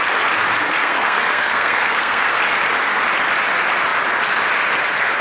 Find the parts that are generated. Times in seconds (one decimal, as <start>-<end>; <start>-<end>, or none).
0.8-2.4